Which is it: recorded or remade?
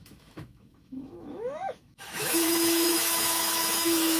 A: remade